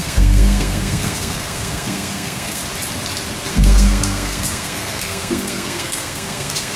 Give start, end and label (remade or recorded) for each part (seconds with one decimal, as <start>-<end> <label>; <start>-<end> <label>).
0.0-2.6 remade; 2.6-3.5 recorded; 3.5-6.8 remade

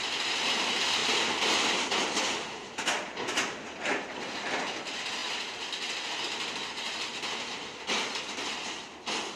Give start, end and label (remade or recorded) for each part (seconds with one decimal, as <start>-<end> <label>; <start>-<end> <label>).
0.0-9.4 recorded

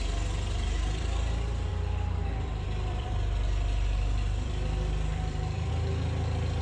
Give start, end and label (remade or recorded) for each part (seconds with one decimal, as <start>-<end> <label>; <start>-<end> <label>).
0.0-1.7 recorded; 1.7-5.7 remade; 5.7-6.6 recorded